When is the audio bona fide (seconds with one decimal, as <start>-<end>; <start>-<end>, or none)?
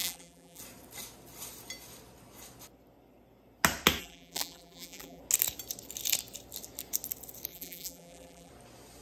0.6-4.0; 5.2-7.5; 8.5-9.0